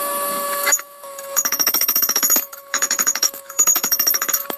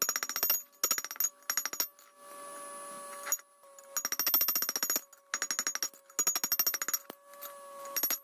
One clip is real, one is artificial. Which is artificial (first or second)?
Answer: first